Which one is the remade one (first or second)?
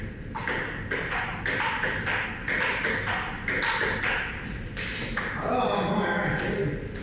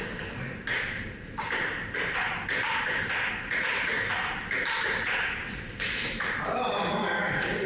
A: second